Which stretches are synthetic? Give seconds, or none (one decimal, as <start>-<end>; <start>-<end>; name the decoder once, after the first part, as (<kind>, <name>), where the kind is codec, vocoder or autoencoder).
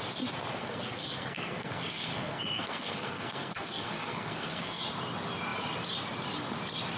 0.6-4.8 (codec, SNAC)